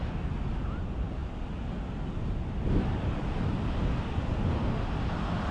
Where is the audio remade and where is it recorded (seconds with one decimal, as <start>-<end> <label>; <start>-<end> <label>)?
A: 0.0-5.5 recorded